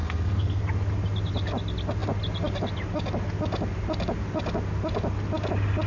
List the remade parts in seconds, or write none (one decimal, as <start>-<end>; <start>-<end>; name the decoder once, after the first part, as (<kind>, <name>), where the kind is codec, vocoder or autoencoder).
0.0-0.6 (codec, SNAC)